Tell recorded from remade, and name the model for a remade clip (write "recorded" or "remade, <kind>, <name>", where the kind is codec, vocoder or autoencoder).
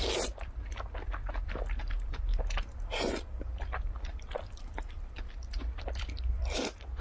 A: remade, vocoder, BigVGAN v2